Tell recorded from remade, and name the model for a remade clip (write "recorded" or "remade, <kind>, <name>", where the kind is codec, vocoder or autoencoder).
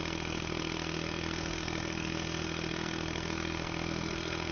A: remade, codec, SNAC